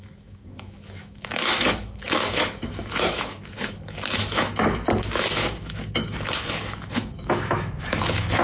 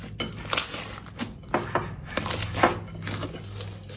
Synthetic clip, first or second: first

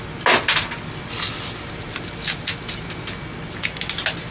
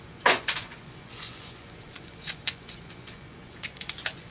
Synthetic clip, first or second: second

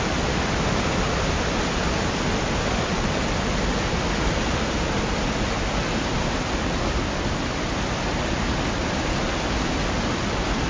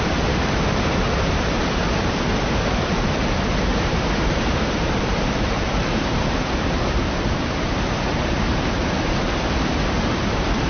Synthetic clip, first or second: second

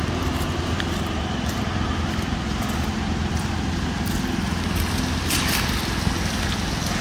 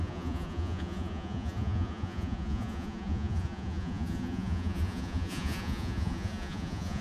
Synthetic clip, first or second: second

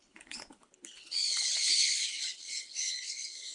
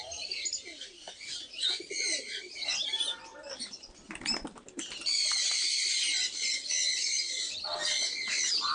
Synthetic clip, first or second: first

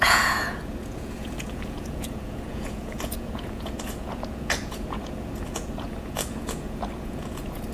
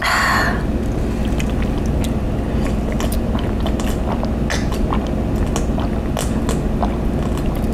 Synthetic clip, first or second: first